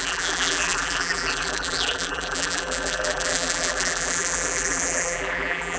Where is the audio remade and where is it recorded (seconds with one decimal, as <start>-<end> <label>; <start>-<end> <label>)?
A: 0.0-5.8 remade